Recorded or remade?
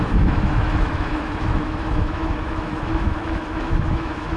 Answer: remade